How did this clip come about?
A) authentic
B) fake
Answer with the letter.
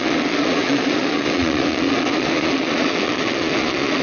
B